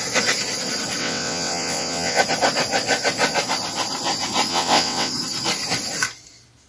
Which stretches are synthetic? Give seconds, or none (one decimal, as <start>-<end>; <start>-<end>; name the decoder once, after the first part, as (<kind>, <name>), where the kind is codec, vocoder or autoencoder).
1.0-2.2 (vocoder, WaveNeXt); 4.5-5.1